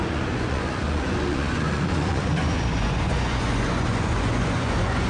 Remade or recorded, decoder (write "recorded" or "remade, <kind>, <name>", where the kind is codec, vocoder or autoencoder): remade, vocoder, Vocos